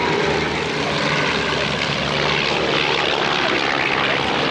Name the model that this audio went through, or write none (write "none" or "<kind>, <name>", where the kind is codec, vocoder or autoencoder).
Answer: none